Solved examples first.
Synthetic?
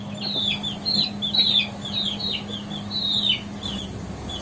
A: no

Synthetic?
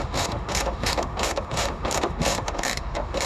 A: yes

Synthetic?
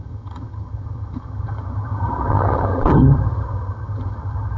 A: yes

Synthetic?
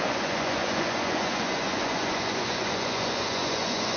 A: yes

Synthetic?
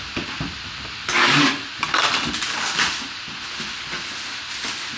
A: no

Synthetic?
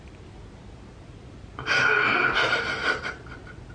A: no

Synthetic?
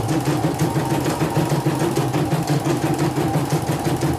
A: no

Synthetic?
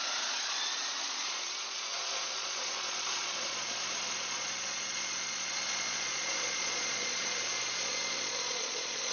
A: yes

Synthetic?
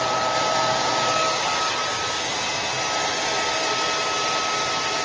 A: no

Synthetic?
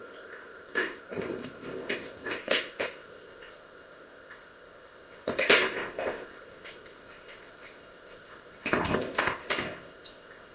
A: yes